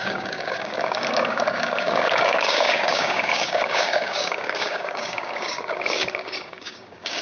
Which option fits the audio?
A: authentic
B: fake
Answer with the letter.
B